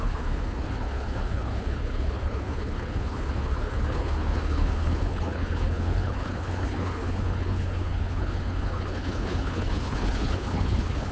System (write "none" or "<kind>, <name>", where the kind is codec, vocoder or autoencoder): codec, HILCodec